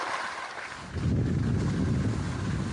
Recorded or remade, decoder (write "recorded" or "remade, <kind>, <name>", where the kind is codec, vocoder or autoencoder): recorded